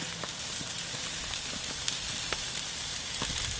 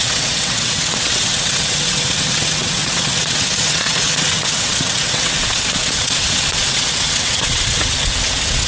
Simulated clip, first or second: second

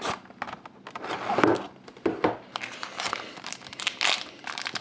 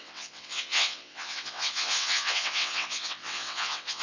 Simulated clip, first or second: second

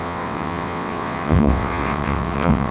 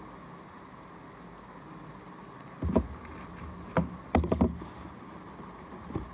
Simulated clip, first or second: first